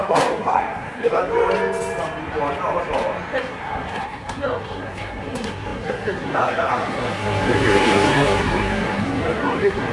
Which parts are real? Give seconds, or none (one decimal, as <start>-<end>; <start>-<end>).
1.2-3.4